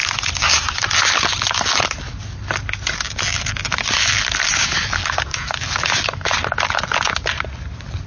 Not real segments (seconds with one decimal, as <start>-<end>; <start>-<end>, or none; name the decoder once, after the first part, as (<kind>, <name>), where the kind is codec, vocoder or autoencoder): none